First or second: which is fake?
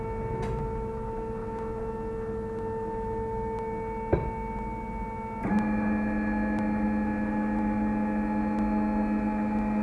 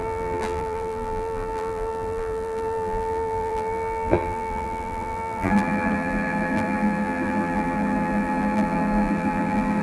second